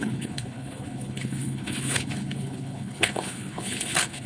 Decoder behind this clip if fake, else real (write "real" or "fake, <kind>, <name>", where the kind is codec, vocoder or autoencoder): fake, codec, HILCodec